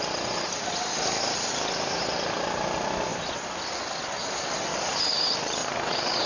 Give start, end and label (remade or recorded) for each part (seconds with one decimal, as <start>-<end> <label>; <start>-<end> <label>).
0.0-5.6 recorded; 5.6-6.3 remade